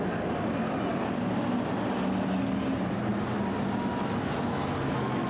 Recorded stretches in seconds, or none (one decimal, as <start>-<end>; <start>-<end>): 0.0-5.3